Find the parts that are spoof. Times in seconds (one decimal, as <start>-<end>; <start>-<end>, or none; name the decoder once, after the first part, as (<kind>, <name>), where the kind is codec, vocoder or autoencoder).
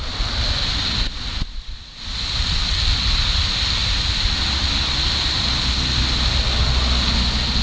none